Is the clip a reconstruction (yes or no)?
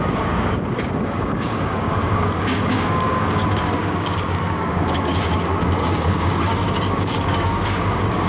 yes